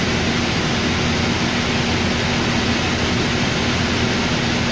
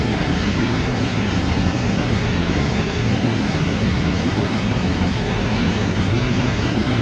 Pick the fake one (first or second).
second